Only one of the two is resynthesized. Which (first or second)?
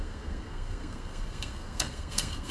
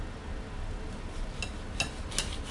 first